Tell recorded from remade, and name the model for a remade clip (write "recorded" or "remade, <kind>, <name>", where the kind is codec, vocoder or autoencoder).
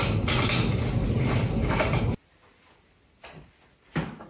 recorded